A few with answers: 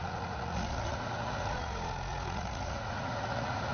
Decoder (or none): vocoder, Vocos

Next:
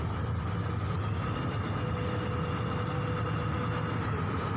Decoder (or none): none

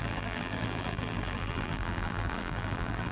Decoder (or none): vocoder, BigVGAN v2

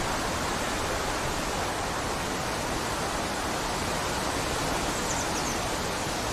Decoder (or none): none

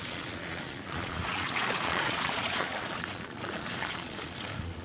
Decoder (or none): vocoder, Vocos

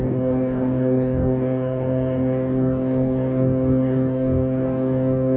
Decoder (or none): codec, DAC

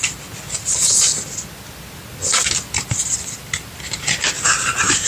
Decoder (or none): none